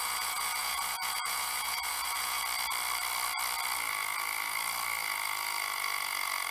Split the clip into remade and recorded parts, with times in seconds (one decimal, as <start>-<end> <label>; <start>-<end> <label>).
0.0-2.4 remade; 2.4-6.5 recorded